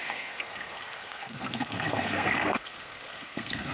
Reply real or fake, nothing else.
fake